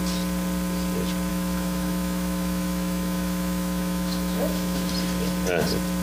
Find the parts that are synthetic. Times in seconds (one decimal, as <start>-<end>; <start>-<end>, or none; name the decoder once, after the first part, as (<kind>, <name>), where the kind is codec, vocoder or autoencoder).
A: 1.3-4.9 (autoencoder, DAC-VAE)